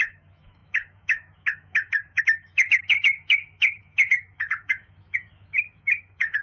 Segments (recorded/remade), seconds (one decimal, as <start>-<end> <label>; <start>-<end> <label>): 0.0-6.4 remade